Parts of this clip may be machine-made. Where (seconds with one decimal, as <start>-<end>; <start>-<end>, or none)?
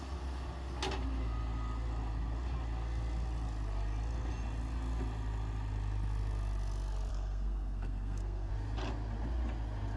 7.1-8.5